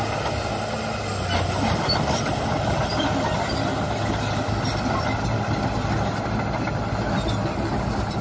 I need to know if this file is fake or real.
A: real